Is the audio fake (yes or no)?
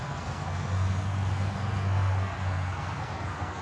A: yes